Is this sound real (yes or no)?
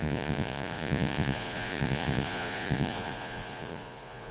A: no